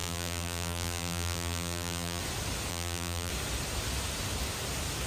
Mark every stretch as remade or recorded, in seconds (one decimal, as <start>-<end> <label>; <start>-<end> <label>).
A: 0.0-2.2 remade; 2.2-2.7 recorded; 2.7-3.3 remade; 3.3-5.1 recorded